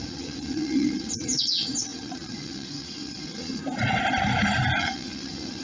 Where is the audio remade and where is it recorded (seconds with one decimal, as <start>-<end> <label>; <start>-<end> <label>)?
0.0-3.6 remade; 3.6-4.8 recorded; 4.8-5.6 remade